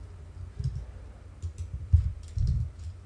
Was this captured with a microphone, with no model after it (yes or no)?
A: yes